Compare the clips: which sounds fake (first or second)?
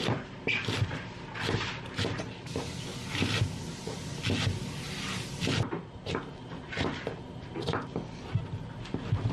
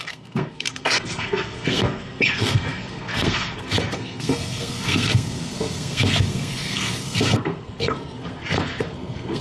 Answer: second